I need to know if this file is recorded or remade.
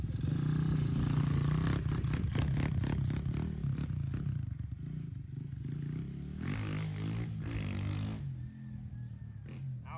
recorded